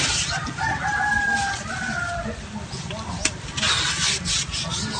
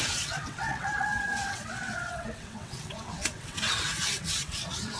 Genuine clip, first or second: first